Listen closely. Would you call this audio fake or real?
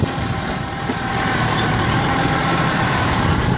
fake